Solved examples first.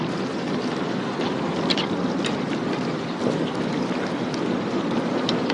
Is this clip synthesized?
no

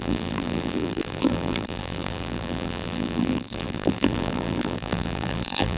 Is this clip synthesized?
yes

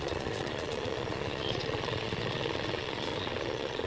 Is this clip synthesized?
yes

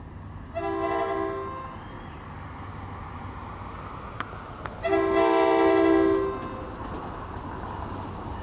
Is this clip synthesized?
no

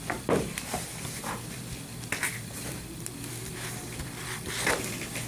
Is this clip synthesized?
yes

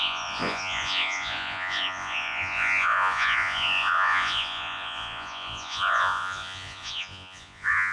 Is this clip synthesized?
yes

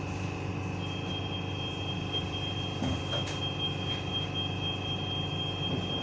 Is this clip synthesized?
no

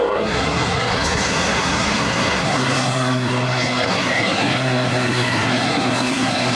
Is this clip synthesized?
yes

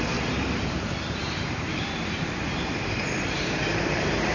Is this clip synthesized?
yes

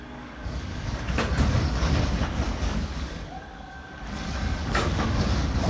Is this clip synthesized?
yes